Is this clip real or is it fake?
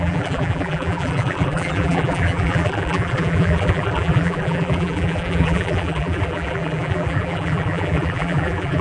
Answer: fake